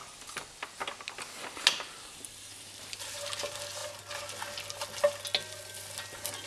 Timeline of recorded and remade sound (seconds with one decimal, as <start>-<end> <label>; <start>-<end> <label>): 0.0-6.5 recorded